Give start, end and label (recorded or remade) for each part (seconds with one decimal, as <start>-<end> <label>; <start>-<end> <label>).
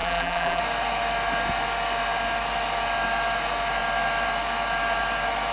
0.0-0.6 remade; 0.6-5.5 recorded